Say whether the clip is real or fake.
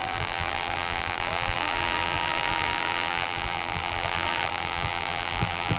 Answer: fake